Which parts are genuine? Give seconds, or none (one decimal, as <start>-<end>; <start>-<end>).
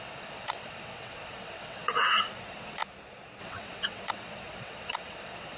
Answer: 2.8-3.4